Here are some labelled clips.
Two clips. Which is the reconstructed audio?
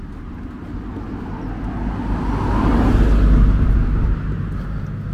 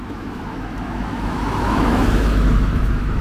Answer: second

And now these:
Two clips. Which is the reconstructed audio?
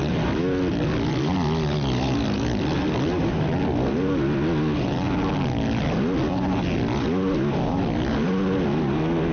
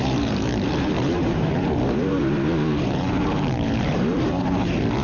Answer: second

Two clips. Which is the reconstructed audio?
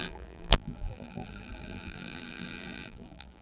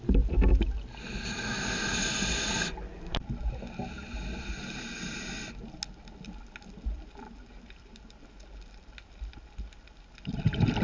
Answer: first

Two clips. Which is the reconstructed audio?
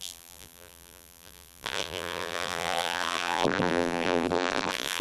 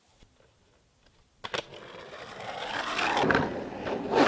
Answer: first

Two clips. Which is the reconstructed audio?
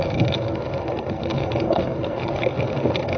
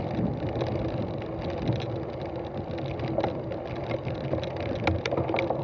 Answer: first